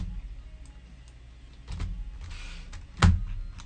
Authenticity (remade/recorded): recorded